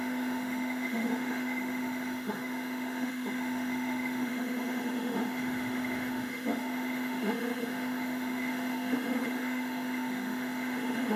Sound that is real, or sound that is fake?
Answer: fake